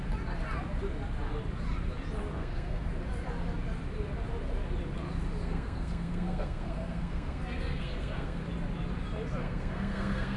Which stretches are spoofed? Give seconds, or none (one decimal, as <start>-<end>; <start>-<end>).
2.4-2.9; 5.4-8.4; 9.4-10.4